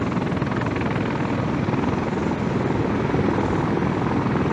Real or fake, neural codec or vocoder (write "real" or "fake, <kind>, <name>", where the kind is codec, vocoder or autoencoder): real